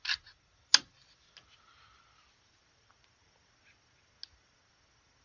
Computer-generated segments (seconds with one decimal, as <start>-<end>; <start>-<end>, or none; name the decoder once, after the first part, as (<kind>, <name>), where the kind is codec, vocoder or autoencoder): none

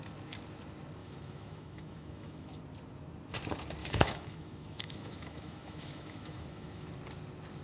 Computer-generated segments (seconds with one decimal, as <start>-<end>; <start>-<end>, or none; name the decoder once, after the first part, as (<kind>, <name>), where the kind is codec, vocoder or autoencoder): 1.0-2.6 (autoencoder, DAC-VAE); 3.8-6.9

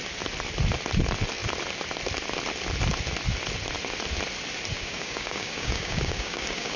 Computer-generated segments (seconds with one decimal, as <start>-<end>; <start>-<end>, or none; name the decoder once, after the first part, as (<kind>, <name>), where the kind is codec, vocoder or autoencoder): 4.7-6.8 (codec, DAC)